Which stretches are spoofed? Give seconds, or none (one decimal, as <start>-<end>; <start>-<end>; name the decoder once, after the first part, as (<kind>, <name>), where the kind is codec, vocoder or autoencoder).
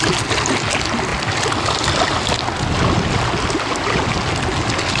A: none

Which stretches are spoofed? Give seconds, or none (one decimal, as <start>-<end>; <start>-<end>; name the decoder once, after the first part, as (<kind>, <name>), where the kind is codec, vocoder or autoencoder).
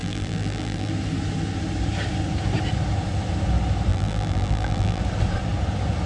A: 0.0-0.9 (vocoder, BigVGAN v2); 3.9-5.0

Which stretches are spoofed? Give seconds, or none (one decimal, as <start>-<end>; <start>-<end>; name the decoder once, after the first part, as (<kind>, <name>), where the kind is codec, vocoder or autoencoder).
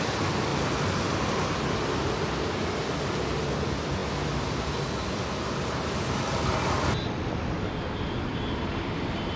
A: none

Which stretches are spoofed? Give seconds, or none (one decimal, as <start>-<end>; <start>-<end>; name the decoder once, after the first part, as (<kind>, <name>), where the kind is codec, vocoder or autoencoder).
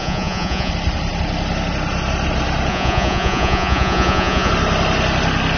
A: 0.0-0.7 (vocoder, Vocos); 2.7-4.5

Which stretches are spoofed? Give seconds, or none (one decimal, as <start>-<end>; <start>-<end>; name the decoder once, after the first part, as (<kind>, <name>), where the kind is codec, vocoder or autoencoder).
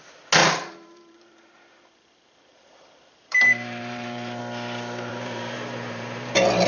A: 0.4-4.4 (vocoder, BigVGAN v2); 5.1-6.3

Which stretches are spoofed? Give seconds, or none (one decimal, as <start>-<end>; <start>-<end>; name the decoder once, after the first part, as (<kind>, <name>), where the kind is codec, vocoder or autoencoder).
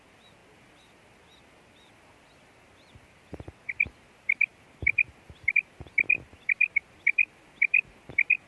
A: none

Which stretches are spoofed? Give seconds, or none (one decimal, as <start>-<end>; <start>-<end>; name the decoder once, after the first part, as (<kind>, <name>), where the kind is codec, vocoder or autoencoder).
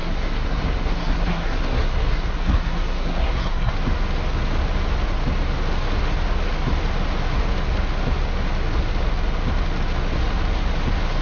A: 0.0-3.7 (codec, SNAC)